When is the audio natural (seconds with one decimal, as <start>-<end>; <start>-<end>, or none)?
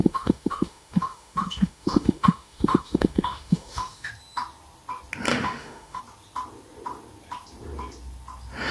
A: 4.1-5.3; 6.0-8.7